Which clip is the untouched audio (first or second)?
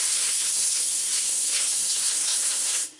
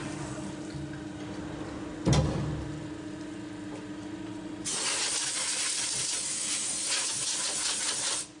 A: second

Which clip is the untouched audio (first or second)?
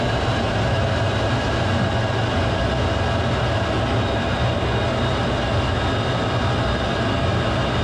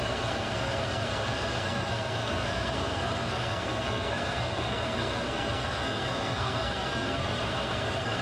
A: first